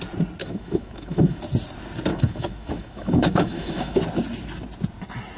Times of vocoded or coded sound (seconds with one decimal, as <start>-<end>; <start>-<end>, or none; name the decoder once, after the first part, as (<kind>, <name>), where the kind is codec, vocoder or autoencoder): 0.4-1.4 (autoencoder, DAC-VAE); 2.1-4.0